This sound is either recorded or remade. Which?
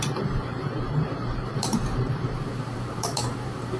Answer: remade